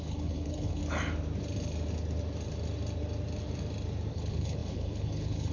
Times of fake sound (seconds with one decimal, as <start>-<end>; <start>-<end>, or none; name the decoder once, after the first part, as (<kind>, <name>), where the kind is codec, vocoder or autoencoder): 0.0-0.8 (codec, HILCodec); 4.1-5.5